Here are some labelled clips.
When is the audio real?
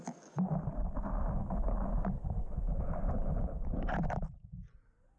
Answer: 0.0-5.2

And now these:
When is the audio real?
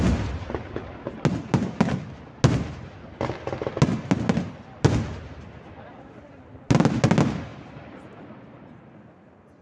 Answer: 0.0-9.6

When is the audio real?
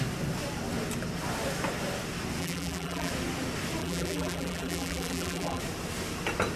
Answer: 0.0-2.4; 3.1-3.8; 5.6-6.6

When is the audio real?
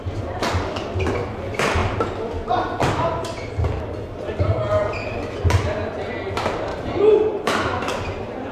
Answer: 0.0-8.5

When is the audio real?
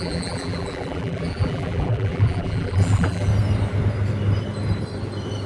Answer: 3.3-5.5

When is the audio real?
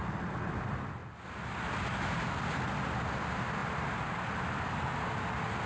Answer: 0.0-5.7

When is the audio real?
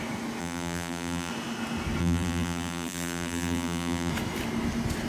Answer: 0.0-0.4; 1.3-2.0; 4.1-5.1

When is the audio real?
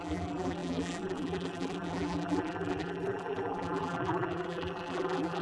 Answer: none